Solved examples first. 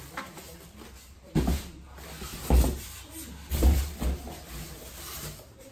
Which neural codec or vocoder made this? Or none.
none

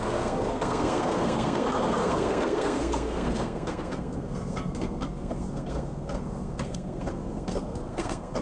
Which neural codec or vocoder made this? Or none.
codec, SNAC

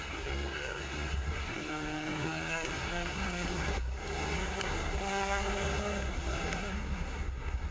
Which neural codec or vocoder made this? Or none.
codec, SNAC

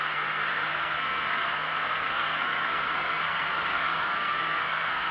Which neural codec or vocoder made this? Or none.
codec, SNAC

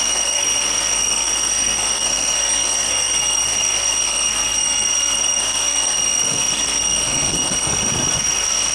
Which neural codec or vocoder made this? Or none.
codec, SNAC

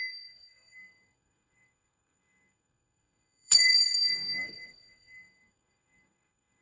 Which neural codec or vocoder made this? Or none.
codec, SNAC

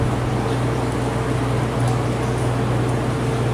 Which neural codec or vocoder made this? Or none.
none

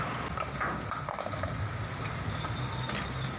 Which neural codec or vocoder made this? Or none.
none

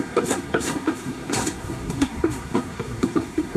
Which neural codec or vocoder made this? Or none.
codec, SNAC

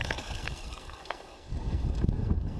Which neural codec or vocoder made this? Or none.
codec, SNAC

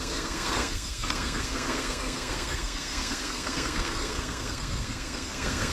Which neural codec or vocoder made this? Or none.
codec, SNAC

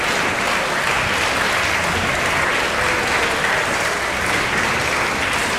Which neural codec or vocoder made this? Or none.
none